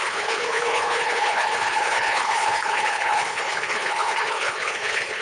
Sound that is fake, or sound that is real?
fake